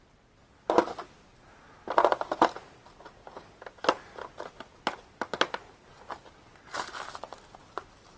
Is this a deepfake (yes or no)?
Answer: no